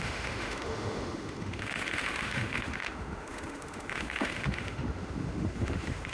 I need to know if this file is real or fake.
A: fake